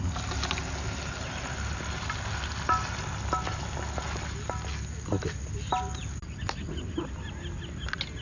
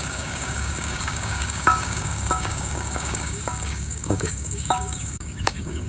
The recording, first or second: first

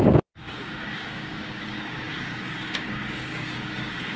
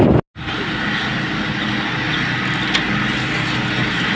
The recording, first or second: second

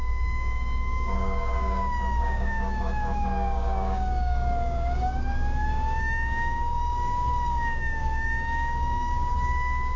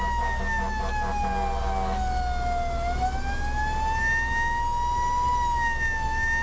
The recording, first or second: second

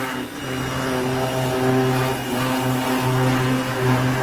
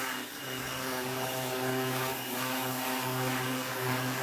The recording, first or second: first